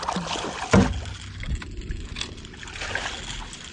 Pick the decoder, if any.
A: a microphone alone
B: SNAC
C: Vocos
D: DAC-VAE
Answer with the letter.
A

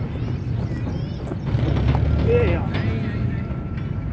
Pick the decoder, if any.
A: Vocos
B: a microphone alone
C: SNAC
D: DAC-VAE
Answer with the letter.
B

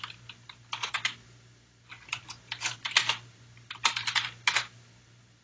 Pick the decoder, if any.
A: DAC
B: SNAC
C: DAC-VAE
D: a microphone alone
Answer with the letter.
D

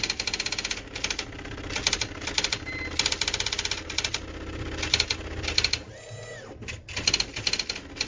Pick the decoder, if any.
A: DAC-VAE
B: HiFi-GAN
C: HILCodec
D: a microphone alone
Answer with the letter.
D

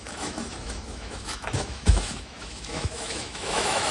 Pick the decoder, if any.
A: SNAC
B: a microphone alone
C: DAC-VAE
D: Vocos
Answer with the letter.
C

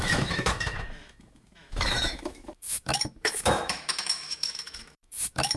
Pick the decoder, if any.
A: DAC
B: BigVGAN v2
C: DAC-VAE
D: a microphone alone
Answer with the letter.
C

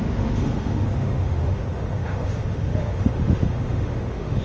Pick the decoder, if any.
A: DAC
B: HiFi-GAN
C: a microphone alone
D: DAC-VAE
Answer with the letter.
D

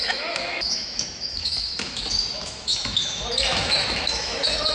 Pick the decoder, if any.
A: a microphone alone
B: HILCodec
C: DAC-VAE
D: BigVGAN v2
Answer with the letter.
C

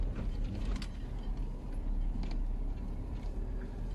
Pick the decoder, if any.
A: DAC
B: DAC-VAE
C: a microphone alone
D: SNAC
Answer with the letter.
C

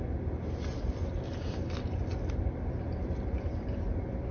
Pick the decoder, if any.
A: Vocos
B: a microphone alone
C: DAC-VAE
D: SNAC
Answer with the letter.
B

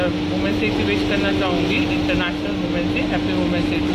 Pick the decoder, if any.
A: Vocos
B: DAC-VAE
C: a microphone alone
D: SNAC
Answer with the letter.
C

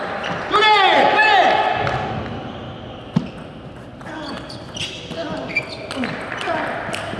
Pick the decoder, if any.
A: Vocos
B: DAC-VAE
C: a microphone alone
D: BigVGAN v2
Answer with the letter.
C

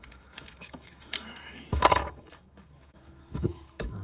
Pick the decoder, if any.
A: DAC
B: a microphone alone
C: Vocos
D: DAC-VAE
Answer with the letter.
D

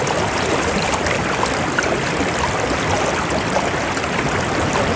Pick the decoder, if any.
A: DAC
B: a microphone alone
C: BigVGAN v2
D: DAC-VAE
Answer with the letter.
B